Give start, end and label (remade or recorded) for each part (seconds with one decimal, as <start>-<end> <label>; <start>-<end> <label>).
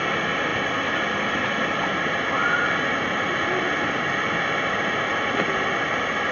0.0-6.3 recorded